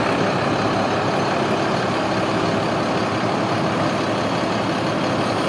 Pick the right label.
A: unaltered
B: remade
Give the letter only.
A